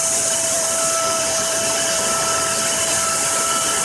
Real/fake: fake